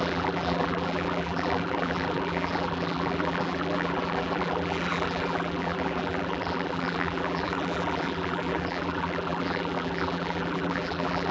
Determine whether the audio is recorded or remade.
remade